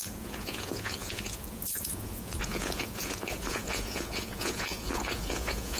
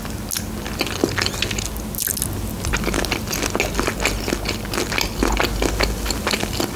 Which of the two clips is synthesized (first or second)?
first